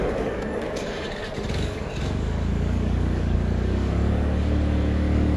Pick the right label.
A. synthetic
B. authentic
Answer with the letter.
A